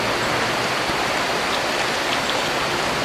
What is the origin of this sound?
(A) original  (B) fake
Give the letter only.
A